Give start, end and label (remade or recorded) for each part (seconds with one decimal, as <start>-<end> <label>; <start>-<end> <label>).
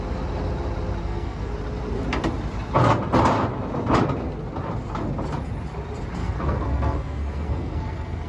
0.0-1.0 recorded; 1.0-1.5 remade; 1.5-6.2 recorded; 6.2-8.3 remade